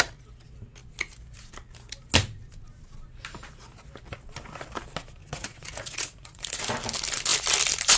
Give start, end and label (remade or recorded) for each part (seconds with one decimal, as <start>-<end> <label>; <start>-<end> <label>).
0.0-5.2 recorded; 5.2-6.6 remade; 6.6-8.0 recorded